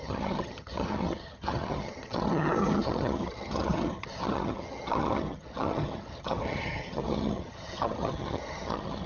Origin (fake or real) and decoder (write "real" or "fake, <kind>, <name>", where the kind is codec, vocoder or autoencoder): fake, vocoder, HiFi-GAN